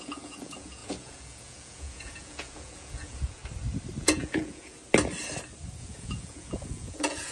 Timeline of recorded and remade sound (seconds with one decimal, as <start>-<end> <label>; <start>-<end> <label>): 0.0-3.4 remade; 3.4-4.0 recorded; 4.0-4.8 remade; 4.8-5.8 recorded; 5.8-7.3 remade

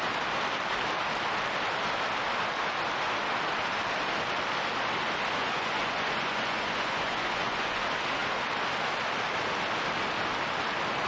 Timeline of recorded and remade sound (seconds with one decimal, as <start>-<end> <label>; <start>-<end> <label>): 0.0-5.4 recorded; 5.4-7.8 remade; 7.8-11.1 recorded